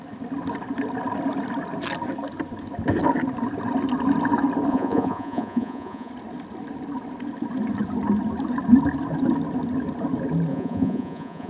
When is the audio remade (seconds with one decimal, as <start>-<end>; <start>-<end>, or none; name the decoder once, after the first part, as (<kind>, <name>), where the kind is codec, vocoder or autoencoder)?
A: 4.7-6.1 (vocoder, Vocos); 10.5-11.5